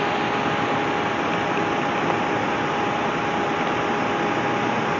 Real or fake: real